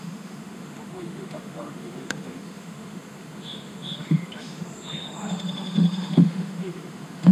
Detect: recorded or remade remade